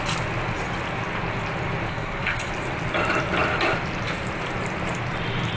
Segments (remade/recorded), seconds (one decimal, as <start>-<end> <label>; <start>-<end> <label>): 0.0-1.9 recorded; 1.9-2.5 remade; 2.5-5.6 recorded